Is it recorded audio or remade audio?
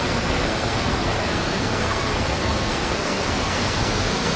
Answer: remade